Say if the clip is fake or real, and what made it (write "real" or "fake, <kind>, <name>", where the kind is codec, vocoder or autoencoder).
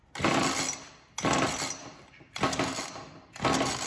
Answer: real